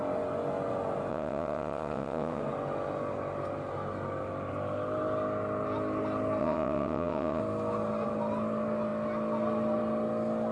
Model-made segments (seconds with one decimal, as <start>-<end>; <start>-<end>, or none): 1.1-2.4; 6.4-7.4